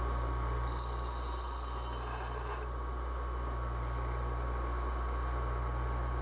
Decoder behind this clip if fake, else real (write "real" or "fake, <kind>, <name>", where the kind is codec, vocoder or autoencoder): real